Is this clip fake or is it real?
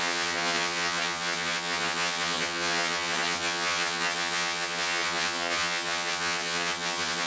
fake